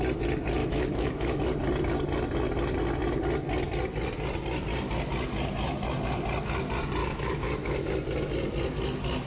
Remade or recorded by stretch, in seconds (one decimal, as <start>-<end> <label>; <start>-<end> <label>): 0.0-0.6 recorded; 0.6-1.4 remade; 1.4-7.0 recorded; 7.0-7.9 remade; 7.9-9.3 recorded

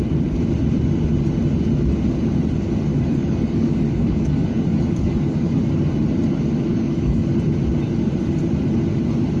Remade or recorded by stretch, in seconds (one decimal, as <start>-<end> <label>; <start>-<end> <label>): 0.0-2.9 recorded; 2.9-5.6 remade; 5.6-6.7 recorded; 6.7-7.3 remade; 7.3-9.4 recorded

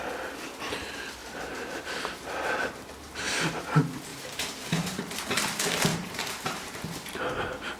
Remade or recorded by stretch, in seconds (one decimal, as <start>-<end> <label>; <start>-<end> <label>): 0.0-1.2 recorded; 1.2-3.4 remade; 3.4-4.1 recorded; 4.1-5.0 remade; 5.0-5.9 recorded; 5.9-6.7 remade; 6.7-7.8 recorded

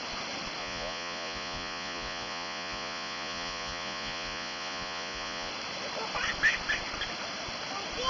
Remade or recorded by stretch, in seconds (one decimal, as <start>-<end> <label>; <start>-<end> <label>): 0.0-0.6 recorded; 0.6-5.5 remade; 5.5-8.1 recorded

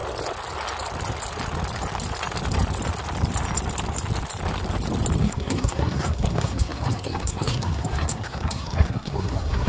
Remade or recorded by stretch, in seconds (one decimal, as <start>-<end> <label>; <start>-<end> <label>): 0.0-5.2 recorded; 5.2-9.7 remade

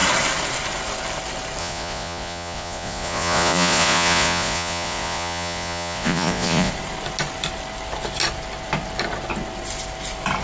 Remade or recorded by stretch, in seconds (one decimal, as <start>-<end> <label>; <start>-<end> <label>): 0.0-1.6 recorded; 1.6-6.7 remade; 6.7-10.4 recorded

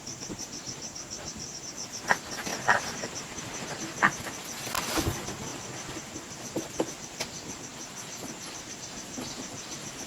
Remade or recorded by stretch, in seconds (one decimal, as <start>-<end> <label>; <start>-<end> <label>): 0.0-10.1 remade

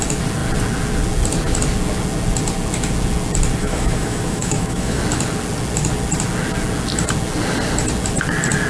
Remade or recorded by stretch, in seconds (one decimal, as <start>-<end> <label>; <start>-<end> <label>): 0.0-3.6 recorded; 3.6-5.0 remade; 5.0-8.7 recorded